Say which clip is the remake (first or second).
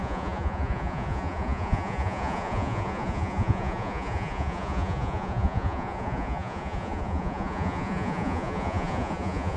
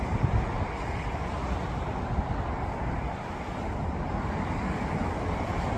first